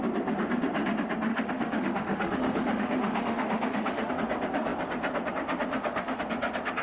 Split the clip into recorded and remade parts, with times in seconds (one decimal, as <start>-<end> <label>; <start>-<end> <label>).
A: 0.0-1.3 recorded; 1.3-4.1 remade; 4.1-5.7 recorded; 5.7-6.2 remade; 6.2-6.8 recorded